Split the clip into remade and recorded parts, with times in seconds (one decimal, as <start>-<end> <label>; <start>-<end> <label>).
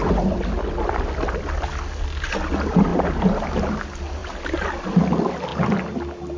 0.0-2.9 recorded; 2.9-3.4 remade; 3.4-6.4 recorded